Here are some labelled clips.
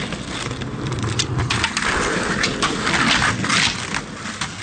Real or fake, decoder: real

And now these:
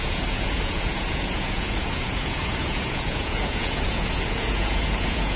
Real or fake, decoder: fake, vocoder, Vocos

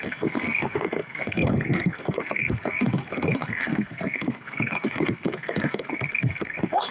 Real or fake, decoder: fake, codec, SNAC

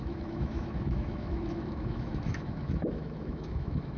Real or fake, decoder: fake, autoencoder, DAC-VAE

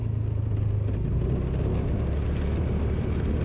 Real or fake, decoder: real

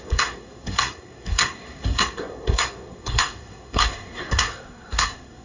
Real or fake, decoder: fake, codec, SNAC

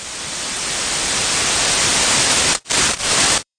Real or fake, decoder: fake, vocoder, BigVGAN v2